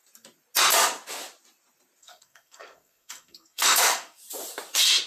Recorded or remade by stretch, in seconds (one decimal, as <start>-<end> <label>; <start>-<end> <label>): 0.0-2.0 recorded; 2.0-4.2 remade; 4.2-5.1 recorded